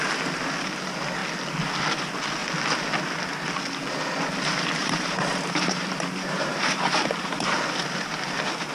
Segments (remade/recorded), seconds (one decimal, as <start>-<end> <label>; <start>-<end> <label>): 0.0-4.8 recorded; 4.8-7.6 remade; 7.6-8.7 recorded